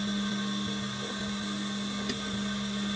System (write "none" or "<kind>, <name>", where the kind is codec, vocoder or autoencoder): none